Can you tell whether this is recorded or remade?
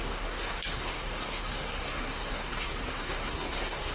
remade